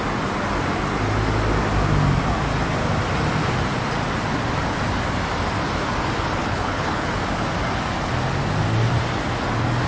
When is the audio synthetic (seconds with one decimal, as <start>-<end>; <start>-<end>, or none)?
6.4-7.1